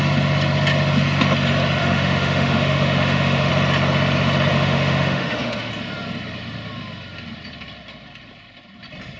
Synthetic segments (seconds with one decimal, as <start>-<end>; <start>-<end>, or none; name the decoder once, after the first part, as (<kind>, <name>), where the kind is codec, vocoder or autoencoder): 1.8-3.5 (autoencoder, DAC-VAE); 4.5-5.7